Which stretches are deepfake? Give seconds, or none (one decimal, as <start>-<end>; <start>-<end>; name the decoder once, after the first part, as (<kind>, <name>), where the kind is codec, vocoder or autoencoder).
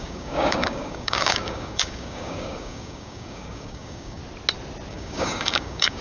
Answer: 0.0-4.2 (codec, DAC); 4.9-6.0